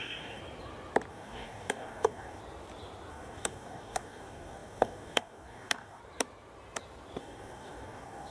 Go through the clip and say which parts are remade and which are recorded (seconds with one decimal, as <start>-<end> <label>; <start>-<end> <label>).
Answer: 0.0-0.4 remade; 0.4-1.1 recorded; 1.1-2.4 remade; 2.4-3.1 recorded; 3.1-6.0 remade; 6.0-7.2 recorded; 7.2-8.3 remade